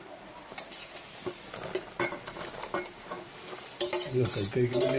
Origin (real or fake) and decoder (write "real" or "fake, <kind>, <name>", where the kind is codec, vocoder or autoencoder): fake, vocoder, BigVGAN v2